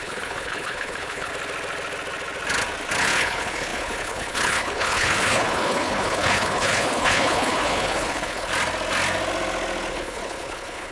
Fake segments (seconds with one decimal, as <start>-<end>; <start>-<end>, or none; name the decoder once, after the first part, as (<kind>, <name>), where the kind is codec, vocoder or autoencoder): 0.0-1.3 (codec, HILCodec); 3.0-8.5; 9.9-10.9